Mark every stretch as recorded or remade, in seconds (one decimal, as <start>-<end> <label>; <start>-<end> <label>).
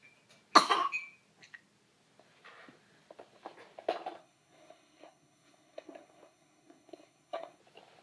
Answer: 0.0-4.2 recorded; 4.2-7.6 remade; 7.6-8.0 recorded